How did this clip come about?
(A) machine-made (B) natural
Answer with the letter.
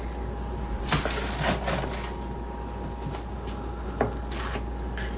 B